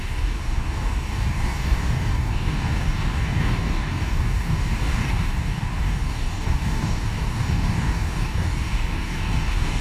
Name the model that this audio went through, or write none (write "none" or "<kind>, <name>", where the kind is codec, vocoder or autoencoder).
codec, DAC